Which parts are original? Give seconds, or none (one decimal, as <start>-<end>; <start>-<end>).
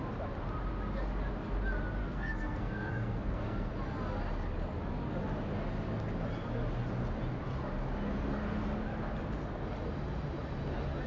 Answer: 0.0-2.0; 3.7-11.1